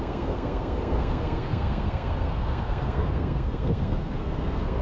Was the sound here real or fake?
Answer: fake